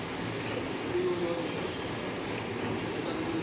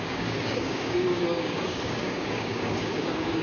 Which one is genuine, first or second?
first